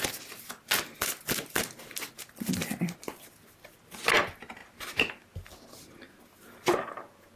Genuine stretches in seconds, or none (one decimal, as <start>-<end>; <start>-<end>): 0.0-7.4